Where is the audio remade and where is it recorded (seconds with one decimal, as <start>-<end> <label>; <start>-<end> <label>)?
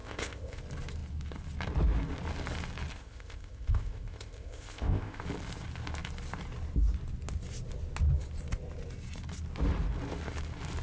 0.0-0.6 remade; 0.6-2.9 recorded; 2.9-5.2 remade; 5.2-10.8 recorded